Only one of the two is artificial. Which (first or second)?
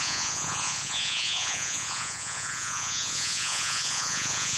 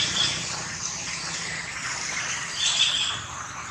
first